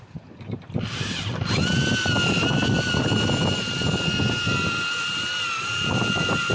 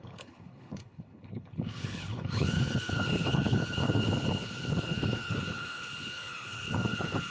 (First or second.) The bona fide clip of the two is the first